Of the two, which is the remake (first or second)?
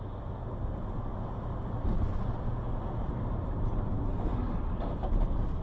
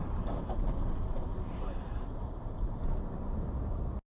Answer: second